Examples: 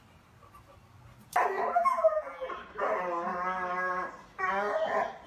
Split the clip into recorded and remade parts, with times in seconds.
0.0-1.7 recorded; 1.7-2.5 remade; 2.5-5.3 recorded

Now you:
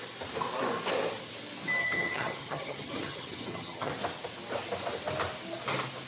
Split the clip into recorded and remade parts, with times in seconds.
0.0-1.8 recorded; 1.8-3.9 remade; 3.9-6.1 recorded

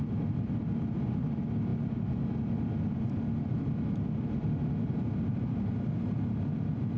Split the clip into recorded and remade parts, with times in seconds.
0.0-7.0 recorded

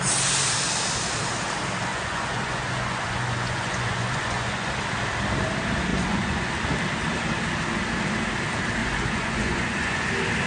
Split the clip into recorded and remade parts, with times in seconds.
0.0-1.9 recorded; 1.9-4.7 remade; 4.7-5.9 recorded; 5.9-6.5 remade; 6.5-8.8 recorded; 8.8-10.1 remade; 10.1-10.5 recorded

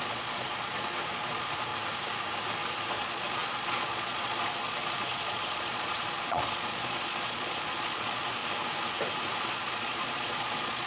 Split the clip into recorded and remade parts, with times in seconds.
0.0-1.7 remade; 1.7-2.9 recorded; 2.9-8.4 remade; 8.4-9.4 recorded; 9.4-10.9 remade

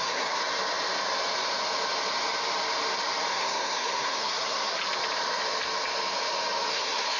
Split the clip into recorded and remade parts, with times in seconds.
0.0-0.4 remade; 0.4-3.3 recorded; 3.3-4.8 remade; 4.8-6.7 recorded; 6.7-7.2 remade

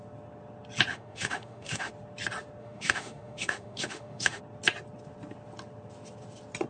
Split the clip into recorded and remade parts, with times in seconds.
0.0-0.9 recorded; 0.9-1.9 remade; 1.9-2.6 recorded; 2.6-4.4 remade; 4.4-6.7 recorded

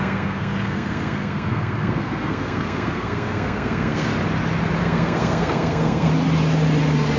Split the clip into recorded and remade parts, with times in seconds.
0.0-4.1 remade; 4.1-4.8 recorded; 4.8-6.1 remade; 6.1-7.2 recorded